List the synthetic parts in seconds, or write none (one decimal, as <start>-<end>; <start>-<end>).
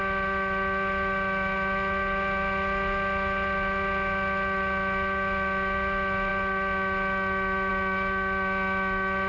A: none